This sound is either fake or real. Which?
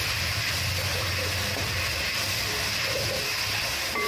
real